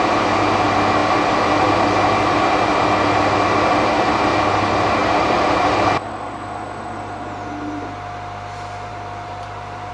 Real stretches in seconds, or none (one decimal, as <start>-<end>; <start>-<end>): 0.0-5.0; 5.7-8.9